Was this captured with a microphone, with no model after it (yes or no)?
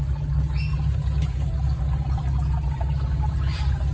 yes